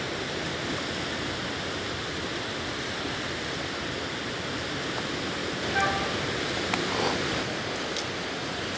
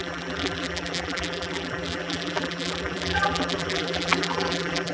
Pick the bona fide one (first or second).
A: first